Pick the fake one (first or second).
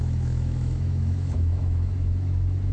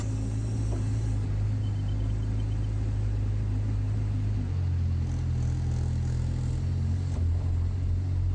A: first